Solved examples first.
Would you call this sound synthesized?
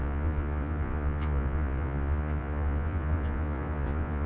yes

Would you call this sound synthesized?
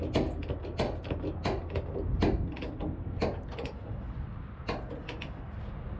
no